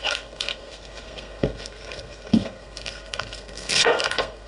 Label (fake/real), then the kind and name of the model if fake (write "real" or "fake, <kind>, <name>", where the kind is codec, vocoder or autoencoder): fake, codec, SNAC